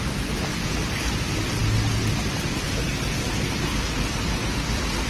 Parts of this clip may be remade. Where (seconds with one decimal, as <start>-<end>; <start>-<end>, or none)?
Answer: none